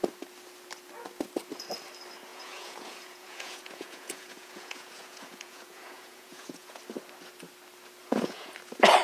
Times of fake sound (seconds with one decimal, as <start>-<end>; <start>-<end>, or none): 2.3-6.8; 8.0-8.5